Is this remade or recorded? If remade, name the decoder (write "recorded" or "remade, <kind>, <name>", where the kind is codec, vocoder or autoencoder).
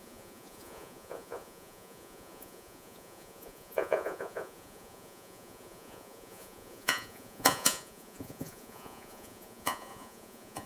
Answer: remade, vocoder, Vocos